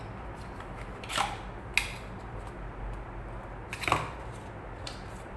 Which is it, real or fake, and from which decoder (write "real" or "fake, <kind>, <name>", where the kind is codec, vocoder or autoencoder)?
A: real